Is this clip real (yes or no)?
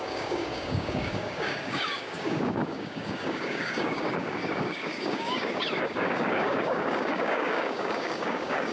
no